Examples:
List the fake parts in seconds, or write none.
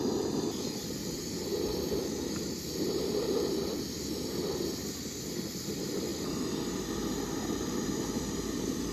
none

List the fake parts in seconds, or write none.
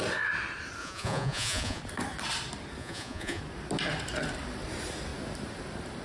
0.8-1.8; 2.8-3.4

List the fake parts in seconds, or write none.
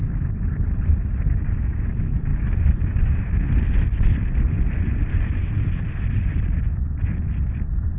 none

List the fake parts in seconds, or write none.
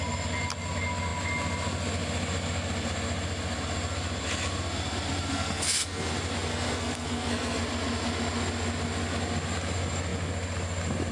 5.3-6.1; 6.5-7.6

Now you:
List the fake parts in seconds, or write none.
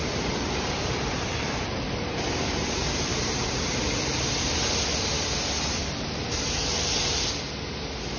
0.0-4.6; 5.8-6.4